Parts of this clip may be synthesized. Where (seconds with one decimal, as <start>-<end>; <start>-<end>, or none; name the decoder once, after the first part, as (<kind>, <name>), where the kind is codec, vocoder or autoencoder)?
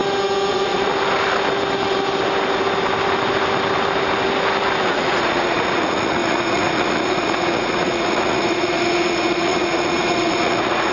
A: 0.5-0.9 (vocoder, Vocos); 4.8-10.9